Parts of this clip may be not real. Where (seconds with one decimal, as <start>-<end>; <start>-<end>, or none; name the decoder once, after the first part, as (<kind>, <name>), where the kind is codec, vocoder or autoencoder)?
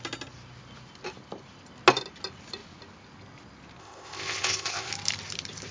3.8-4.9 (codec, ZipCodec)